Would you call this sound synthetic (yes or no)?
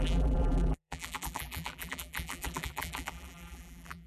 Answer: yes